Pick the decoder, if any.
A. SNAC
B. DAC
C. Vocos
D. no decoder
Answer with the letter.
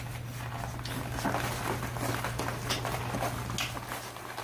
D